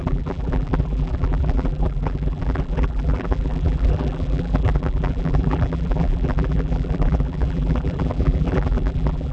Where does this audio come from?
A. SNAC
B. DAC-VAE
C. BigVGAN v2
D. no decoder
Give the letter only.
C